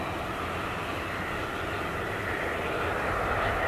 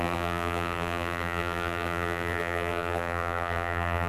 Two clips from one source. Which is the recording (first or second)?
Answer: first